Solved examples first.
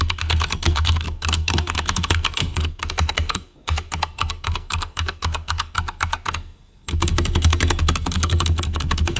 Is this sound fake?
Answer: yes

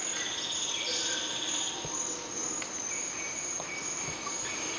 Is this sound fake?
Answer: no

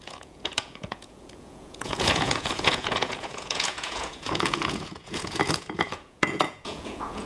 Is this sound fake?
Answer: yes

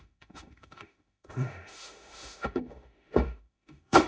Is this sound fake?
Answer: yes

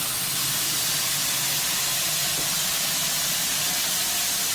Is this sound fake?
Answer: no